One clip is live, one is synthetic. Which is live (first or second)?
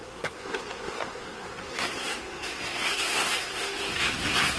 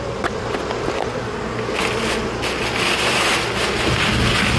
second